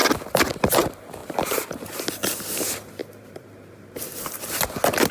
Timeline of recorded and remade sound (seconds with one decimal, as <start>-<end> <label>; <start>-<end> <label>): 0.0-1.2 recorded; 1.2-1.8 remade; 1.8-3.0 recorded; 3.0-4.4 remade; 4.4-5.1 recorded